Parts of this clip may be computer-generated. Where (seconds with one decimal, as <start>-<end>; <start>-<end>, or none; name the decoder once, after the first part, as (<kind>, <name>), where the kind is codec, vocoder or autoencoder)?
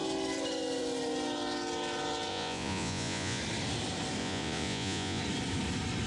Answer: 2.3-3.4 (vocoder, Vocos); 4.2-5.2